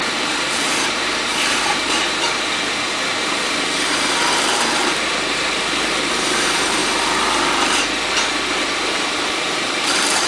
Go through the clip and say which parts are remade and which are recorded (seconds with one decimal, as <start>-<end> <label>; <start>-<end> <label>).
0.0-6.8 remade; 6.8-8.6 recorded; 8.6-10.3 remade